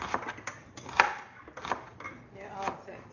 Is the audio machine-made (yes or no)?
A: no